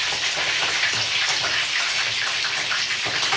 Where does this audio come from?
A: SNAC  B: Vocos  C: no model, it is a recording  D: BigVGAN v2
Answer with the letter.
C